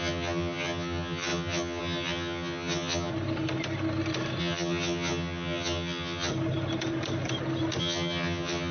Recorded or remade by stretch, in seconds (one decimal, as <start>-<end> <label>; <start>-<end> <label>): 0.0-3.1 remade; 3.1-4.4 recorded; 4.4-6.3 remade; 6.3-7.8 recorded; 7.8-8.7 remade